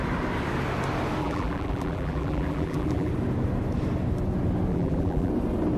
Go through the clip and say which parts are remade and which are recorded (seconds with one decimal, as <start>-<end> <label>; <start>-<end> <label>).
0.0-1.2 recorded; 1.2-3.1 remade; 3.1-4.7 recorded; 4.7-5.3 remade; 5.3-5.8 recorded